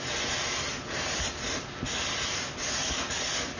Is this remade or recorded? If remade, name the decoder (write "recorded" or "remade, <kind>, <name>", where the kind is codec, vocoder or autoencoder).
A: recorded